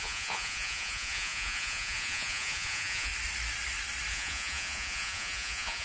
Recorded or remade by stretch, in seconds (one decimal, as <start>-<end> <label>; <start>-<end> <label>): 0.0-3.1 remade; 3.1-4.1 recorded; 4.1-5.8 remade

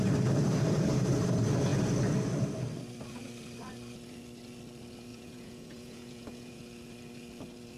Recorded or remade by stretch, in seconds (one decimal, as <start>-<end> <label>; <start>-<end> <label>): 0.0-5.1 recorded; 5.1-6.6 remade; 6.6-7.8 recorded

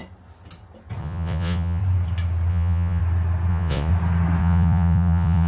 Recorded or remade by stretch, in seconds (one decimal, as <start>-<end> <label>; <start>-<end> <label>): 0.0-1.0 recorded; 1.0-1.8 remade; 1.8-2.5 recorded; 2.5-3.0 remade; 3.0-3.5 recorded; 3.5-3.9 remade; 3.9-4.4 recorded; 4.4-5.5 remade

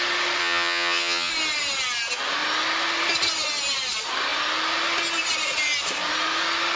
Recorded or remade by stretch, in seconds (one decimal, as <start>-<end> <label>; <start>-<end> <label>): 0.0-0.4 recorded; 0.4-1.3 remade; 1.3-6.8 recorded

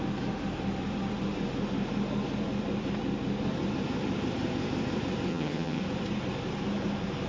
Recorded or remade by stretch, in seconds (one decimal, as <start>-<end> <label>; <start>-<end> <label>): 0.0-5.3 recorded; 5.3-5.8 remade; 5.8-7.3 recorded